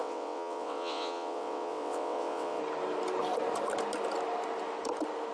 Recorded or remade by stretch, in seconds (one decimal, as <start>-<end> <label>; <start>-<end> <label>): 0.0-2.6 remade; 2.6-5.3 recorded